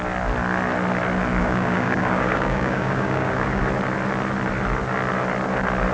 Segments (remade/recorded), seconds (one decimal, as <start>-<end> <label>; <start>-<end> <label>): 0.0-1.4 recorded; 1.4-3.6 remade; 3.6-5.9 recorded